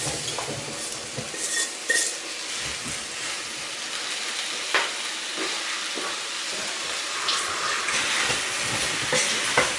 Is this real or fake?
real